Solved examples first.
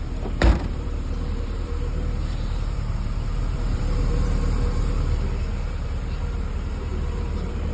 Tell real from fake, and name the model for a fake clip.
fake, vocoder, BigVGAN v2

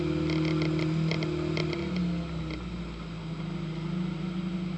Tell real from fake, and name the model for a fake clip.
real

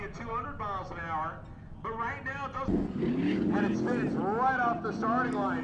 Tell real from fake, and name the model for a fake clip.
real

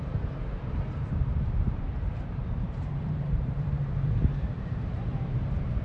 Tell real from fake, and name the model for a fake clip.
fake, vocoder, BigVGAN v2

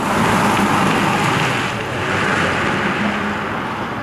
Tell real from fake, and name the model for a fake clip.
real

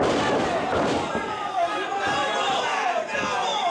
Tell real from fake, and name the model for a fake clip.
fake, vocoder, BigVGAN v2